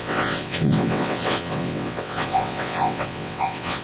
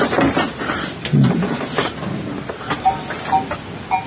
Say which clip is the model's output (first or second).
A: first